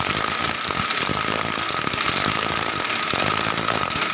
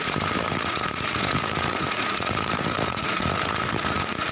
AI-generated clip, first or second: second